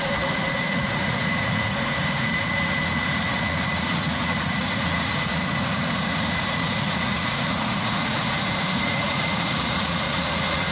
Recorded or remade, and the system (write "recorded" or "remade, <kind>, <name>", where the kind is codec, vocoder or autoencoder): remade, vocoder, Vocos